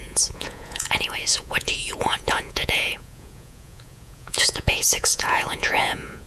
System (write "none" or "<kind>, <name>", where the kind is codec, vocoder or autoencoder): vocoder, Vocos